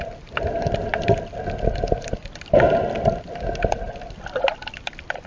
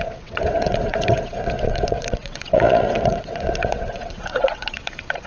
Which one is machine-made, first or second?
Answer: second